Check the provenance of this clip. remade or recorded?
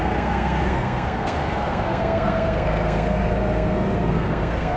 remade